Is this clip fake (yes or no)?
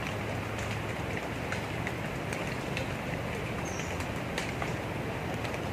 no